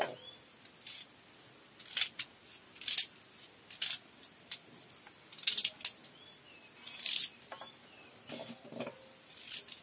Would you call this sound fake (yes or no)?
no